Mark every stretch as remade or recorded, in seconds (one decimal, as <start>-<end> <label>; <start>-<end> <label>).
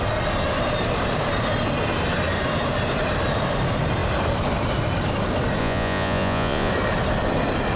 0.0-5.6 recorded; 5.6-6.7 remade; 6.7-7.8 recorded